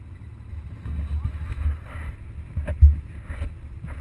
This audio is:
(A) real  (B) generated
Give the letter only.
A